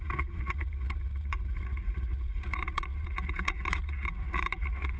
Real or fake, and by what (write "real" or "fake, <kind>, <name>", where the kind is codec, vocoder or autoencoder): fake, vocoder, Vocos